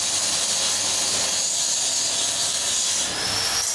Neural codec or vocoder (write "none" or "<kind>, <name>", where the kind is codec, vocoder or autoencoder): none